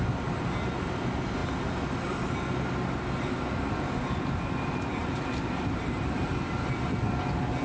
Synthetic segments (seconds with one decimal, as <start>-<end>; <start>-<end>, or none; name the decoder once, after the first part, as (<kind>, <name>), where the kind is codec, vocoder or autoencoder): 5.0-6.3 (vocoder, BigVGAN v2)